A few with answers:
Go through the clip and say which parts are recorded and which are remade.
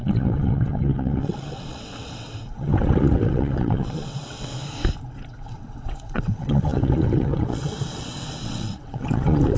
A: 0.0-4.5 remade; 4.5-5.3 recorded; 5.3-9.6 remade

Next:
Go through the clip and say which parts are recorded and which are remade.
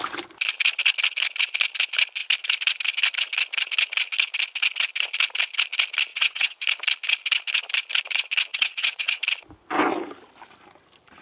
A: 0.0-6.1 recorded; 6.1-6.6 remade; 6.6-8.5 recorded; 8.5-9.2 remade; 9.2-11.2 recorded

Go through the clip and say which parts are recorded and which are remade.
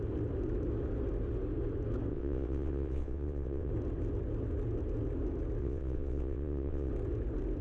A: 0.0-2.1 recorded; 2.1-3.7 remade; 3.7-5.6 recorded; 5.6-6.9 remade; 6.9-7.6 recorded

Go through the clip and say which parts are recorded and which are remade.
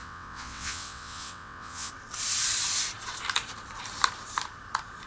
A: 0.0-1.9 remade; 1.9-5.1 recorded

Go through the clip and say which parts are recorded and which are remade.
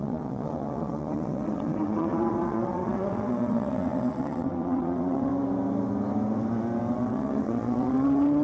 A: 0.0-5.3 remade; 5.3-6.9 recorded; 6.9-8.4 remade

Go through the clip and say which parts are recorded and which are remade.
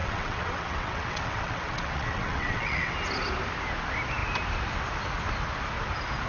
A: 0.0-2.9 remade; 2.9-6.3 recorded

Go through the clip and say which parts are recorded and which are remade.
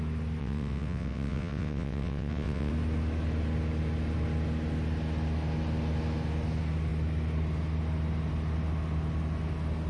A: 0.0-0.4 recorded; 0.4-2.7 remade; 2.7-9.9 recorded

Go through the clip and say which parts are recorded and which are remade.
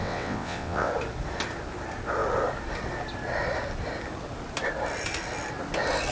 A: 0.0-0.9 remade; 0.9-6.1 recorded